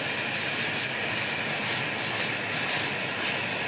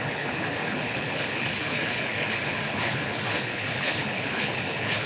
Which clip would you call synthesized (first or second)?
second